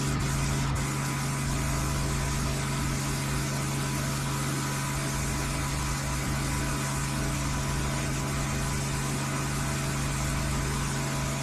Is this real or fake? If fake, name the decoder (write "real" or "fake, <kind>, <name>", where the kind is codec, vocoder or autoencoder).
real